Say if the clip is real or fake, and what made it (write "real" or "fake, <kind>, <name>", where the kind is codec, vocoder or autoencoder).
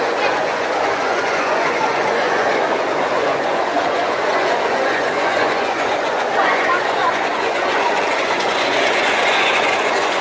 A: fake, vocoder, Vocos